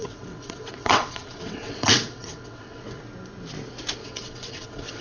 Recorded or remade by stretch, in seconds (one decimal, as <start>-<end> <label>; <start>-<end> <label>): 0.0-3.0 remade; 3.0-4.0 recorded; 4.0-5.0 remade